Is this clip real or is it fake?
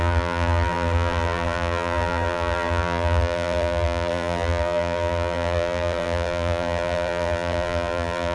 fake